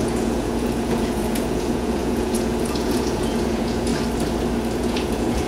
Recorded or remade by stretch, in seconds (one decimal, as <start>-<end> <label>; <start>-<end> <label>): 0.0-3.9 remade; 3.9-4.8 recorded; 4.8-5.5 remade